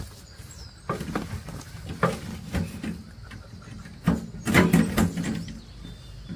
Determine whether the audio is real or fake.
real